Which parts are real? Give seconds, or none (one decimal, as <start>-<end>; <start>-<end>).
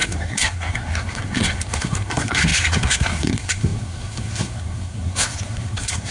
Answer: none